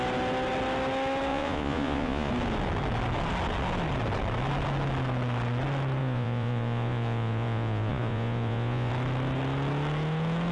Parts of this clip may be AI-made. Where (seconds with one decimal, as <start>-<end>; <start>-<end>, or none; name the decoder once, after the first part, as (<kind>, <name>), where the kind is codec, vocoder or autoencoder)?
1.3-2.3 (vocoder, Vocos); 6.0-8.9